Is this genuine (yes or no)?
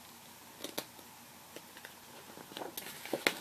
yes